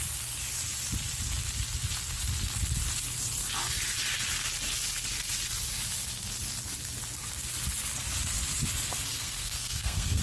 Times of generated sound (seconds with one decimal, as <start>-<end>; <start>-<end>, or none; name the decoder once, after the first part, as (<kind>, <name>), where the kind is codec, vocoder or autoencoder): 9.2-10.2 (codec, SNAC)